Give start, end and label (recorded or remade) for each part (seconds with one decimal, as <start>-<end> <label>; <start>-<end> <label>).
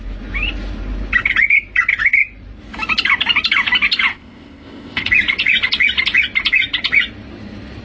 0.0-4.1 recorded; 4.1-5.1 remade; 5.1-7.8 recorded